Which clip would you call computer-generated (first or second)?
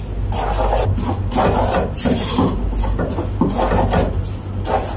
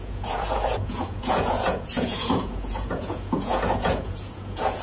second